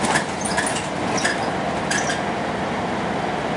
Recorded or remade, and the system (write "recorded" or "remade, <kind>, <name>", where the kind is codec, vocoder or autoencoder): recorded